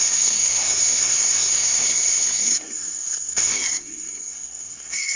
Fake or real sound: fake